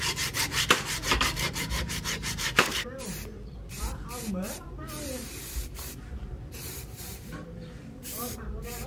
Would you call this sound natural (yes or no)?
no